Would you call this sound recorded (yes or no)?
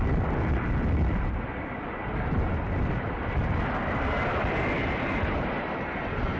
yes